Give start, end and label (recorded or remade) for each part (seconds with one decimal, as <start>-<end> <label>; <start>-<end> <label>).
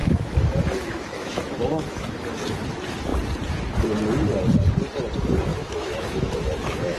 0.0-2.4 remade; 2.4-5.5 recorded; 5.5-7.0 remade